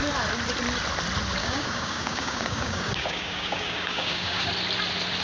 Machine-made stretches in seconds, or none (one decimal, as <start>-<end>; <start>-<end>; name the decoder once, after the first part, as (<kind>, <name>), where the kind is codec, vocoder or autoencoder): 1.4-4.5 (codec, DAC)

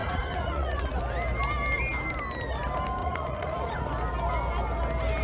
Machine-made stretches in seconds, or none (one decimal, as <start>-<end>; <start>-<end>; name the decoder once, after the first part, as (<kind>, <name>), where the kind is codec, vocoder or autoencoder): 0.0-1.0 (vocoder, Vocos); 3.0-3.8

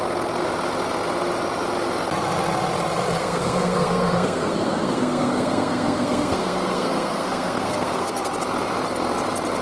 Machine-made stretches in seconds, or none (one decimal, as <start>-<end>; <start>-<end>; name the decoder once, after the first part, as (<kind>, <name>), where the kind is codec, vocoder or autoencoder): 3.2-8.3 (codec, SNAC)

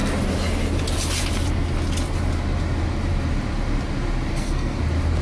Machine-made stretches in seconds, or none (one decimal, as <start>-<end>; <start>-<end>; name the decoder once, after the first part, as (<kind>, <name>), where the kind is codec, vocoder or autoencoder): 4.3-4.8 (codec, SNAC)